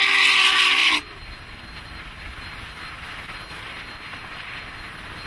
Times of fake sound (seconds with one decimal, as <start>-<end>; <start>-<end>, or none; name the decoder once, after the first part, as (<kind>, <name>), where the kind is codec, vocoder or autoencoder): none